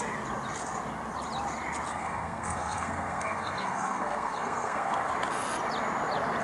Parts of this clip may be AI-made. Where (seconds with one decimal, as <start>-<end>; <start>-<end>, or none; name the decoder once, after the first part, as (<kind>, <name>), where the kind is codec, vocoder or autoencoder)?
1.9-5.1 (codec, SNAC)